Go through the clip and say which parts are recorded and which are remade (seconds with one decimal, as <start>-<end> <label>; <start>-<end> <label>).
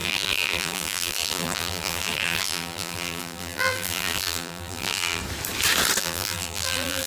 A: 0.0-5.2 remade; 5.2-6.0 recorded; 6.0-7.1 remade